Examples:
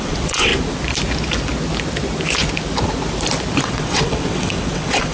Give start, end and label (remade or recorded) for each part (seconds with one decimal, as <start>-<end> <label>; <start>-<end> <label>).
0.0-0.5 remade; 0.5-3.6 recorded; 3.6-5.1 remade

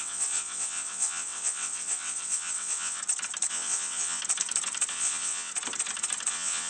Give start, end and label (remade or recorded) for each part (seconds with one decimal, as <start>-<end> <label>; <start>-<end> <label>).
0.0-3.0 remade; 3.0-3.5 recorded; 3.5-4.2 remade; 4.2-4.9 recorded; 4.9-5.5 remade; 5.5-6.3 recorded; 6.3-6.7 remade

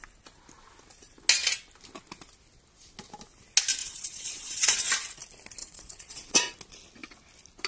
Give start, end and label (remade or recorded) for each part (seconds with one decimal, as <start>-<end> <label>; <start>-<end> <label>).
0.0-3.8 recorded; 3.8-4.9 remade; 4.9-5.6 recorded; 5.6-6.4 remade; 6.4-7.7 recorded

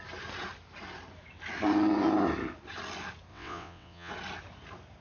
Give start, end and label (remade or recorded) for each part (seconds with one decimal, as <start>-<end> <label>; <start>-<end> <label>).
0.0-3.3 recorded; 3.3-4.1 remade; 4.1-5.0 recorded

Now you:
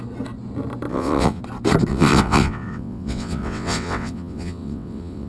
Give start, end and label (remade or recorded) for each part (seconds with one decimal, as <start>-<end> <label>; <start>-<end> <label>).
0.0-0.9 recorded; 0.9-1.4 remade; 1.4-1.9 recorded; 1.9-5.3 remade

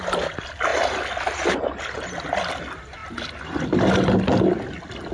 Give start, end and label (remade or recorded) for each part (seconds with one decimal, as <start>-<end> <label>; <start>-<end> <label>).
0.0-5.1 recorded